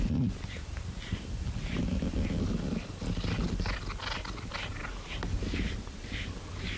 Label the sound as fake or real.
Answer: real